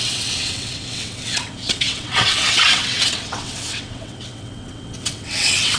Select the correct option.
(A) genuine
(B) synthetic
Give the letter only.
B